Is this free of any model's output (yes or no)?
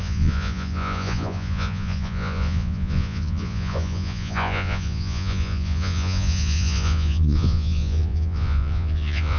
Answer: no